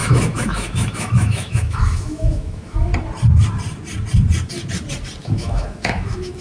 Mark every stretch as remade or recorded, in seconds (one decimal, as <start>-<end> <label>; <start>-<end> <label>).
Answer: 0.0-2.9 remade; 2.9-5.2 recorded; 5.2-6.4 remade